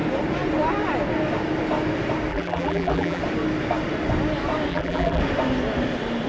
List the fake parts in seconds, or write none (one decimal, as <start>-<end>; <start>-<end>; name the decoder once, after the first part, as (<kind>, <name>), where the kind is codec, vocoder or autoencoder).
2.3-3.2 (vocoder, BigVGAN v2); 4.7-5.2